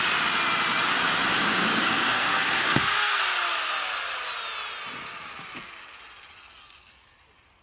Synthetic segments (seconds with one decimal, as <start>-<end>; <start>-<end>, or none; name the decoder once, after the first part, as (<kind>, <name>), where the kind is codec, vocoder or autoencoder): 1.7-3.2 (codec, SNAC)